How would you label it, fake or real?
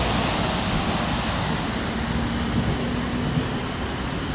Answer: real